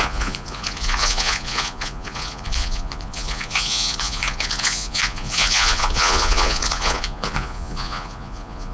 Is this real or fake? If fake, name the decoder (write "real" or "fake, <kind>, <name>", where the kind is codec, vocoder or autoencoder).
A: fake, vocoder, Vocos